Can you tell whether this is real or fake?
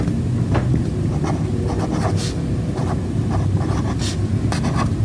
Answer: real